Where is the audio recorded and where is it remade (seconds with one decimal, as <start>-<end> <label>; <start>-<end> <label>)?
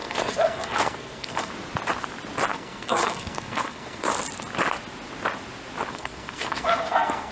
0.0-1.5 remade; 1.5-2.5 recorded; 2.5-4.1 remade; 4.1-5.9 recorded; 5.9-7.3 remade